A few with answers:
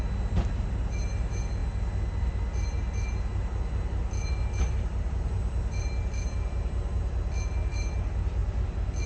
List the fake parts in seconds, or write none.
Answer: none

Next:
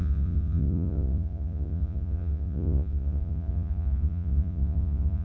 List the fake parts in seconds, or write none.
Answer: 0.0-5.2 (vocoder, Vocos)

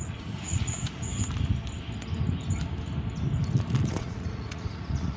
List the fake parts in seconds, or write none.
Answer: 0.0-0.8 (vocoder, Vocos); 3.9-5.2